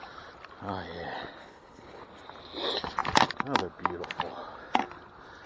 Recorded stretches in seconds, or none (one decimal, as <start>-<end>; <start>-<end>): 0.0-1.4; 2.0-5.5